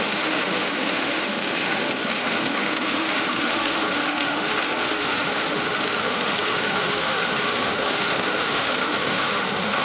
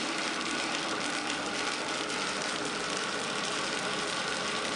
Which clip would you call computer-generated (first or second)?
first